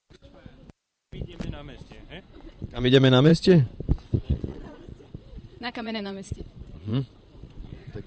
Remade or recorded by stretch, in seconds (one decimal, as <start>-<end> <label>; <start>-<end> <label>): 0.0-2.2 recorded; 2.2-3.3 remade; 3.3-3.9 recorded; 3.9-8.1 remade